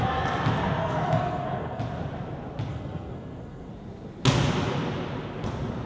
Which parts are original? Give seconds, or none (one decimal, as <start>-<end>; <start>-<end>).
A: 0.0-0.8; 1.8-2.7; 3.7-5.9